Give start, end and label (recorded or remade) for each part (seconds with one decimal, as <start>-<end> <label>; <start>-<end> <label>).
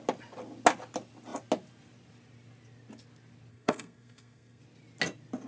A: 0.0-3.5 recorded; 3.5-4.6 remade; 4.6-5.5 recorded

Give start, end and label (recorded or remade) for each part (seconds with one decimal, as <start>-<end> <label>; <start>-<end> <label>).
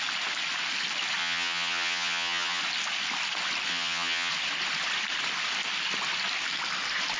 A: 0.0-1.2 recorded; 1.2-2.6 remade; 2.6-3.7 recorded; 3.7-4.3 remade; 4.3-7.2 recorded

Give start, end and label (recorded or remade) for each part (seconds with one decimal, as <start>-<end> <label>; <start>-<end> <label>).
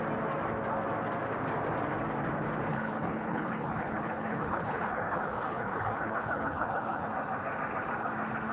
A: 0.0-2.7 recorded; 2.7-7.1 remade; 7.1-8.5 recorded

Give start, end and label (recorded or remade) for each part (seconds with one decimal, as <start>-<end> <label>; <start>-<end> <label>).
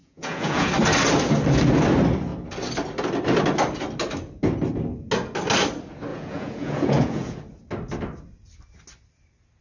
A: 0.0-0.7 remade; 0.7-6.1 recorded; 6.1-7.4 remade; 7.4-9.6 recorded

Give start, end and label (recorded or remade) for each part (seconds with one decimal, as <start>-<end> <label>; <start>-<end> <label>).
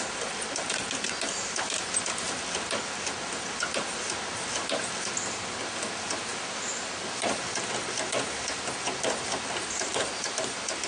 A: 0.0-10.9 recorded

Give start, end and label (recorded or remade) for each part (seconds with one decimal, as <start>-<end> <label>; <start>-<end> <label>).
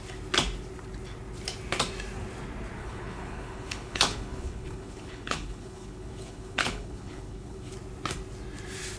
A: 0.0-2.8 recorded; 2.8-7.7 remade; 7.7-9.0 recorded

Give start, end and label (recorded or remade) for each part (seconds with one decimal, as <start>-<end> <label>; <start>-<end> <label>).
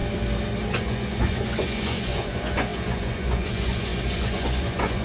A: 0.0-0.7 recorded; 0.7-5.0 remade